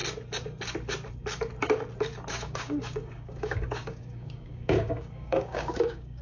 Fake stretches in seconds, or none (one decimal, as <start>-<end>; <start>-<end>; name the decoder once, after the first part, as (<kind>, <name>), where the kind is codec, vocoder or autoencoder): 2.3-6.2 (codec, DAC)